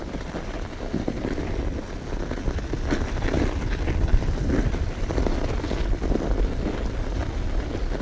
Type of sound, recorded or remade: recorded